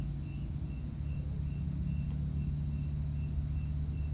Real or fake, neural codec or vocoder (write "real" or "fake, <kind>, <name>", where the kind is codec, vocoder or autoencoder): real